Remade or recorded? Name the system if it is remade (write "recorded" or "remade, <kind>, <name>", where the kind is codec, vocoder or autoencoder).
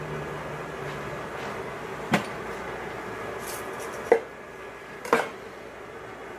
recorded